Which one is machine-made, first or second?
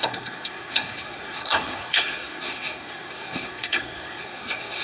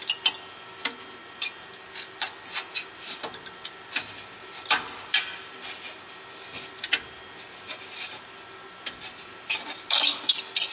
first